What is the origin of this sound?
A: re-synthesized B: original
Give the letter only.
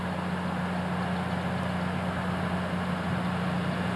B